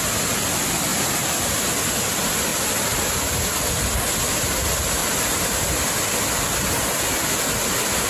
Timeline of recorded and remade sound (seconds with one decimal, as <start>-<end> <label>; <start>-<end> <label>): 0.0-0.9 recorded; 0.9-1.4 remade; 1.4-2.5 recorded; 2.5-3.7 remade; 3.7-5.0 recorded; 5.0-6.1 remade; 6.1-8.1 recorded